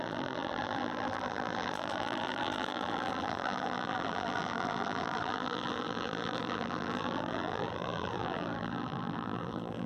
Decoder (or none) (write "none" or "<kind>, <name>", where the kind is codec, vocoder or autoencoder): vocoder, BigVGAN v2